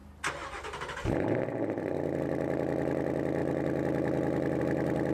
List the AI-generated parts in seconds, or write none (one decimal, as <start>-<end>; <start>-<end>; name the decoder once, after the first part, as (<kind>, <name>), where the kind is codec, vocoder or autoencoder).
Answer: none